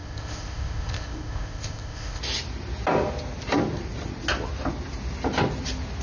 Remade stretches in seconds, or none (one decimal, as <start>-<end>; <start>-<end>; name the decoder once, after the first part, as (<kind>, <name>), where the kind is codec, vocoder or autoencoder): 0.0-2.2 (codec, ZipCodec)